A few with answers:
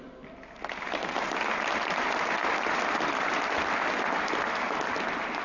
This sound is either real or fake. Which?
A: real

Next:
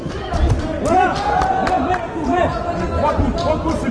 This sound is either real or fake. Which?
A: real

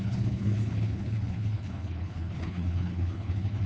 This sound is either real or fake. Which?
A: fake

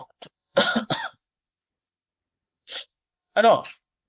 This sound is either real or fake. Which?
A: fake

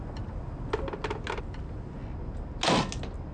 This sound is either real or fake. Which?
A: real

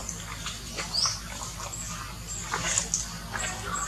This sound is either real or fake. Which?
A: real